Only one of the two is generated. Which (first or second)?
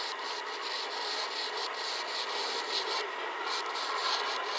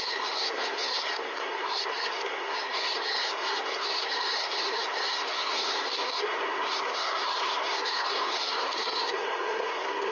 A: second